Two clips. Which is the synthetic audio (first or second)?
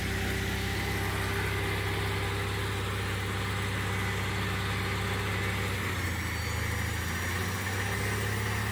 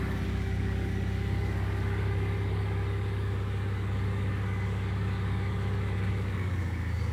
second